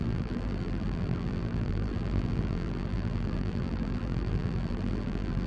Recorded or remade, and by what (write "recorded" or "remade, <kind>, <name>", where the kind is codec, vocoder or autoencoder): remade, vocoder, BigVGAN v2